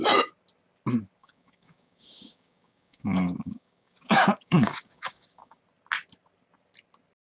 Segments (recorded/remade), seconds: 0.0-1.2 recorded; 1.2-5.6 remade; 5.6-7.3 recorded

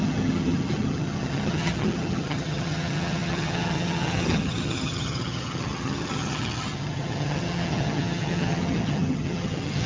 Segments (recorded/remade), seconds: 0.0-9.9 remade

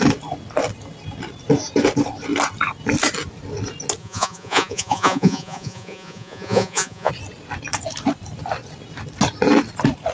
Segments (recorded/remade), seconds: 0.0-4.0 recorded; 4.0-7.1 remade; 7.1-10.1 recorded

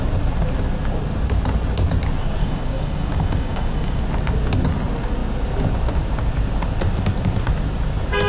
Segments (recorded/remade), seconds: 0.0-2.4 recorded; 2.4-4.0 remade; 4.0-8.3 recorded

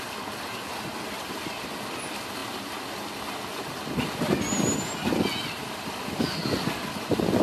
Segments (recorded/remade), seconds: 0.0-7.4 recorded

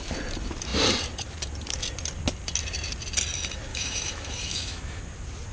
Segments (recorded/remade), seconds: 0.0-3.7 recorded; 3.7-5.0 remade; 5.0-5.5 recorded

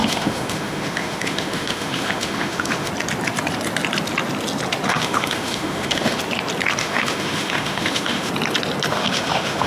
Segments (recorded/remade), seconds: 0.0-2.9 remade; 2.9-4.9 recorded; 4.9-6.2 remade; 6.2-6.8 recorded; 6.8-8.3 remade; 8.3-8.9 recorded; 8.9-9.7 remade